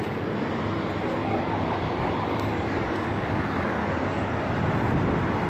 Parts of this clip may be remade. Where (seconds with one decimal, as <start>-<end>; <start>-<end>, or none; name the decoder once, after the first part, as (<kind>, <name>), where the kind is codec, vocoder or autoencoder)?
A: 1.2-4.5 (codec, DAC)